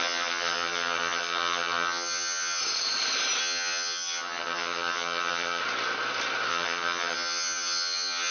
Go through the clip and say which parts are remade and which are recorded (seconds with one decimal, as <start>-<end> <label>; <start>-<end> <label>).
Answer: 0.0-2.6 remade; 2.6-3.4 recorded; 3.4-5.6 remade; 5.6-6.5 recorded; 6.5-8.3 remade